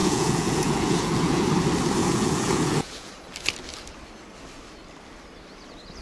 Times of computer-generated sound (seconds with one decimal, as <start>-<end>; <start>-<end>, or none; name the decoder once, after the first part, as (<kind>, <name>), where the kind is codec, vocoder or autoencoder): 0.0-1.4 (vocoder, Vocos); 2.0-3.1

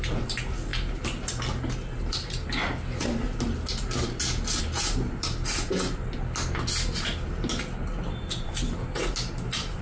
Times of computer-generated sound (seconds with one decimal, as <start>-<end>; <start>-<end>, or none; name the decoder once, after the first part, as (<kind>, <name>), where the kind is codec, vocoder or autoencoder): none

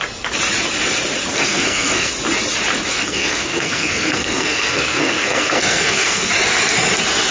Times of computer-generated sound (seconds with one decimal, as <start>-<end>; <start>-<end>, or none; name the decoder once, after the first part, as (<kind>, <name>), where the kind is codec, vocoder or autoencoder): 1.3-2.1 (codec, SNAC); 2.9-6.3